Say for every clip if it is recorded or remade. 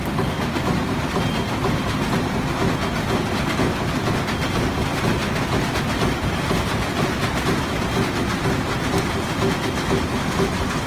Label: recorded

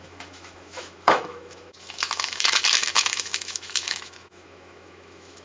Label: remade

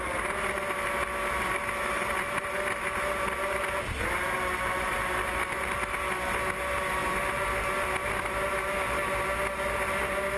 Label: recorded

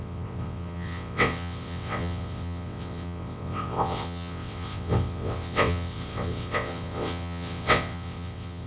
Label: remade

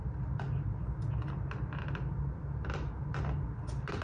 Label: recorded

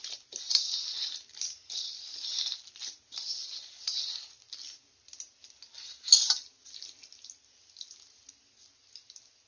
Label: recorded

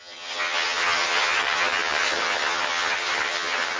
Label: remade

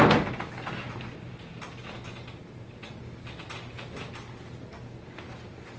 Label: recorded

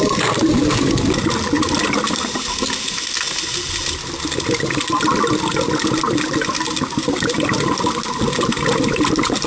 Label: recorded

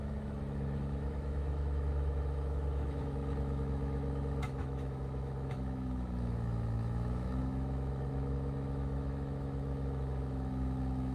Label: remade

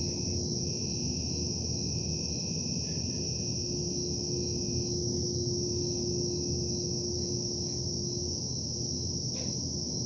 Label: recorded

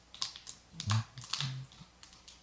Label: recorded